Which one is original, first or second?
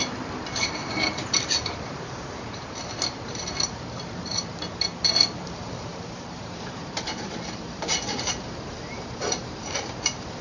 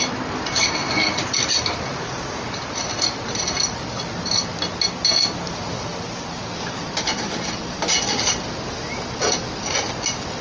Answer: second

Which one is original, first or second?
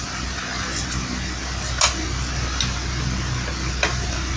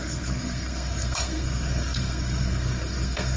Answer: first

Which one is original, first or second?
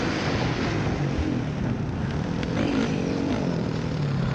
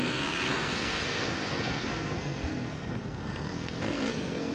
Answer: first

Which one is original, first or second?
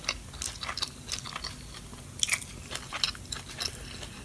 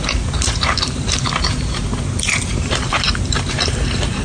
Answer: first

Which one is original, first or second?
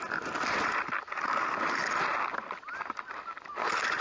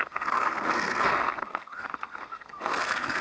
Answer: first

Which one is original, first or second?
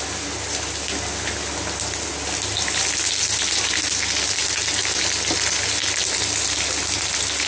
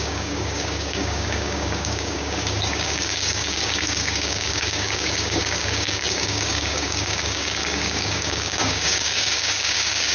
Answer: first